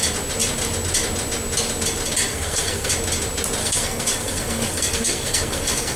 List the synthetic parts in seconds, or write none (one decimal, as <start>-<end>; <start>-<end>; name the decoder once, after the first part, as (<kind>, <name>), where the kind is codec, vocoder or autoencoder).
2.3-2.9 (codec, SNAC); 3.6-6.0